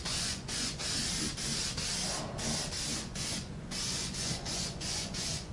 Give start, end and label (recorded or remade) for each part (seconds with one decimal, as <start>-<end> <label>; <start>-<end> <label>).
0.0-0.8 remade; 0.8-2.9 recorded; 2.9-5.5 remade